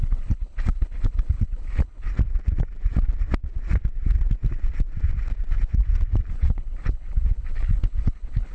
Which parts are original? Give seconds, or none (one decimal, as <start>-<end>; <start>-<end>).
2.1-6.3